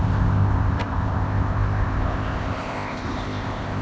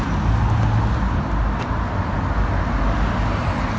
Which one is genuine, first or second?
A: second